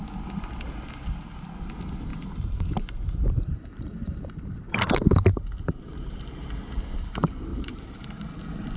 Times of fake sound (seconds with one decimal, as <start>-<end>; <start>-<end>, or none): 2.1-6.6; 7.5-8.3